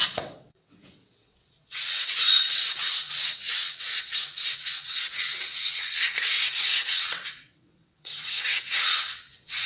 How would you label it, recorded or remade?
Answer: remade